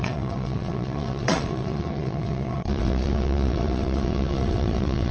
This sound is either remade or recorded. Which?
remade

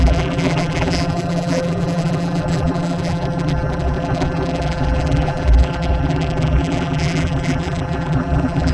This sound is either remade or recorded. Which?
remade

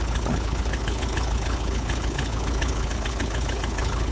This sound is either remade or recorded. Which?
remade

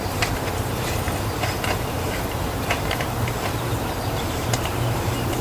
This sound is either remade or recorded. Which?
remade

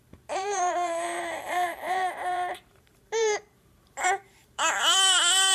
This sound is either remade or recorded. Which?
remade